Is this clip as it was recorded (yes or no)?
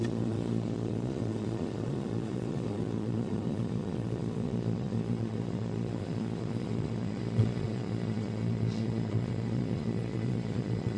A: no